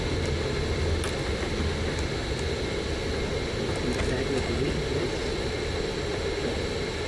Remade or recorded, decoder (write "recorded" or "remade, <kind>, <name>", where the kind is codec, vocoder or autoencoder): recorded